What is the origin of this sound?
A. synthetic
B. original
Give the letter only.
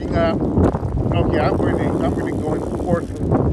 B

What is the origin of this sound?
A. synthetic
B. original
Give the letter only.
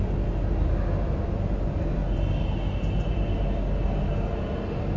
B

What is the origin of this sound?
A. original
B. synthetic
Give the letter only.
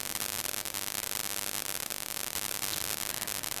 A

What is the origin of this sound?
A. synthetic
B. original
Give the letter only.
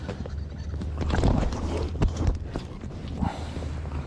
B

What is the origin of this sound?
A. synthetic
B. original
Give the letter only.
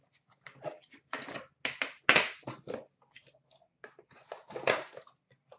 B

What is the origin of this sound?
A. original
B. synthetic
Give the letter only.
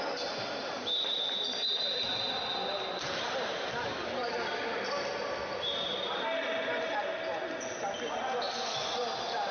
A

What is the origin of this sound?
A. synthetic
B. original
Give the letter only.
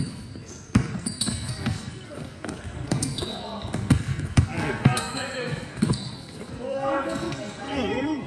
A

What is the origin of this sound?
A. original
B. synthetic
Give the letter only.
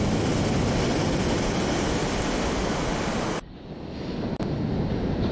A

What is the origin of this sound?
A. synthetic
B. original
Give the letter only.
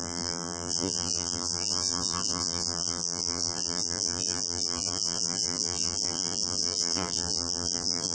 A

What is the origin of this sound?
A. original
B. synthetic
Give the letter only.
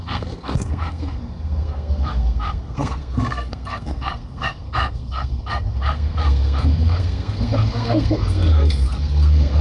B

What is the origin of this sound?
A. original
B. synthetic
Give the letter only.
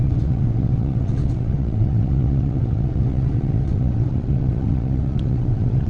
B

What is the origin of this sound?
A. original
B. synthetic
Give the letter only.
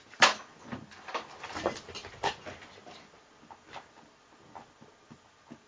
A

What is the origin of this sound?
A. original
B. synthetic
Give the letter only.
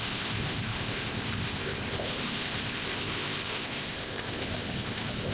B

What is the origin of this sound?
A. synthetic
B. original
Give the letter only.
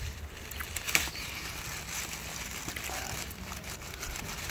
B